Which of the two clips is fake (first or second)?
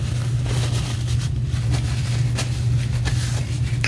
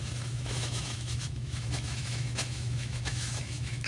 second